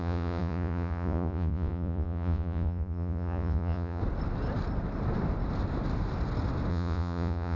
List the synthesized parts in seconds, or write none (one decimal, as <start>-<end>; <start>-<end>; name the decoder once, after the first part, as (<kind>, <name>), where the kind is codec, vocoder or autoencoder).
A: 0.0-4.0 (vocoder, Vocos); 6.7-7.6